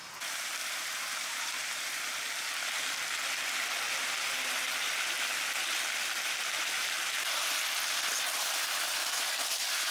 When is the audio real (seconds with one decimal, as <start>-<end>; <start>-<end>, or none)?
0.0-0.6; 1.9-9.9